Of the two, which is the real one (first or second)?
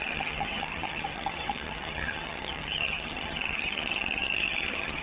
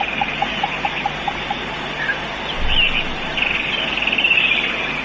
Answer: second